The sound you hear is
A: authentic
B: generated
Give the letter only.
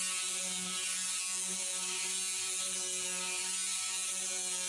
A